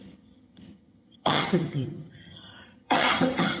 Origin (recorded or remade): remade